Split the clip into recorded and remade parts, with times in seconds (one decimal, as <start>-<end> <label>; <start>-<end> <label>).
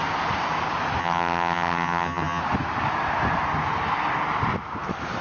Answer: 0.0-1.0 recorded; 1.0-2.4 remade; 2.4-5.2 recorded